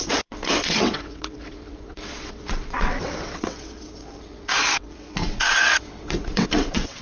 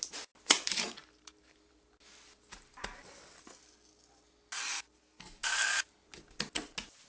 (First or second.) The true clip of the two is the second